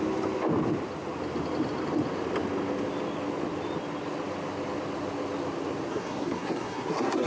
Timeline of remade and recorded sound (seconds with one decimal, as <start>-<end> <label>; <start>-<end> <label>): 0.0-5.9 recorded; 5.9-7.3 remade